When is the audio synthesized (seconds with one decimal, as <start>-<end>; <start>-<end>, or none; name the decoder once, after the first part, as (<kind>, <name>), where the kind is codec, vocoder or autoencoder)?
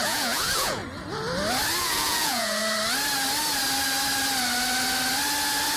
0.0-0.8 (vocoder, Vocos); 1.8-2.6